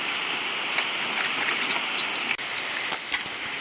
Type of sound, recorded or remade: recorded